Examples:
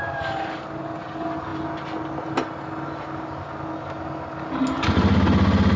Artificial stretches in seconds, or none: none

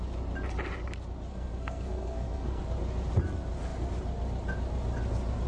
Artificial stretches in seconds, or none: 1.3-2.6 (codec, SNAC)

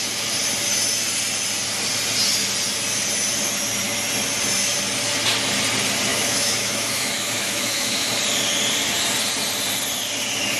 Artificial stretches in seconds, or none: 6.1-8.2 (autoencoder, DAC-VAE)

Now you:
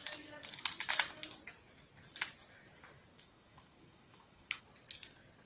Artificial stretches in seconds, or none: 3.1-4.6 (autoencoder, DAC-VAE)

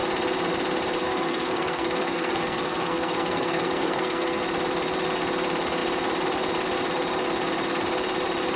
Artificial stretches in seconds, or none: 1.0-4.4 (codec, SNAC)

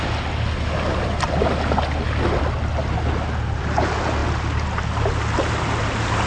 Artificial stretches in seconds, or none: none